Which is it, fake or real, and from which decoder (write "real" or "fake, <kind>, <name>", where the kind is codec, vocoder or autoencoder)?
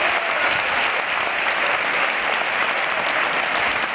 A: real